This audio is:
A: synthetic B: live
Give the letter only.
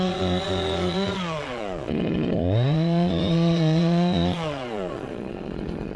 A